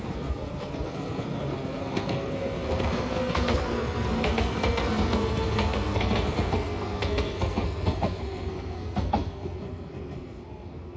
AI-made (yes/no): yes